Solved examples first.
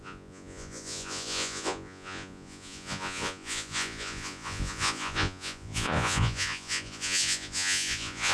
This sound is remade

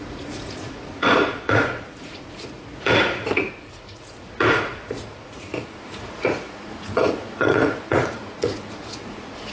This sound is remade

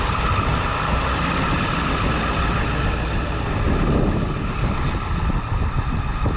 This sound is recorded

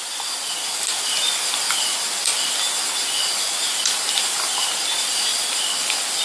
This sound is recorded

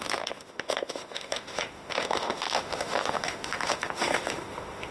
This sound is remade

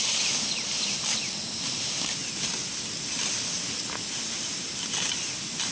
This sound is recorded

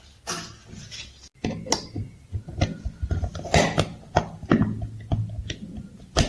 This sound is recorded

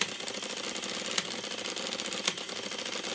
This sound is recorded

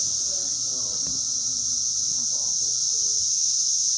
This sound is recorded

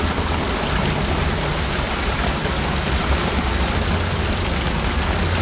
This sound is recorded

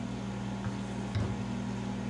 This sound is recorded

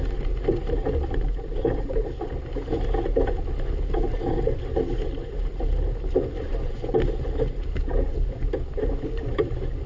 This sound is recorded